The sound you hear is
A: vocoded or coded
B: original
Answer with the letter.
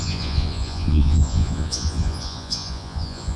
A